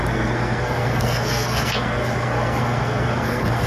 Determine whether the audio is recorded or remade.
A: remade